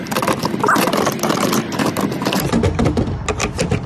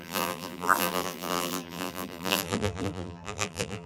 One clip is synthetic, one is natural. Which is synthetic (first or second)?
second